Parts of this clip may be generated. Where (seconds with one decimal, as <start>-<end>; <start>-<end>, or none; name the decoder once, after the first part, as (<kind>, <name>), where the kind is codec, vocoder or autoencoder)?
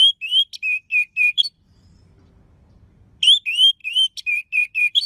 0.9-1.5 (vocoder, BigVGAN v2); 3.8-5.1